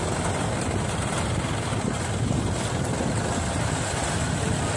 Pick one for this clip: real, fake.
real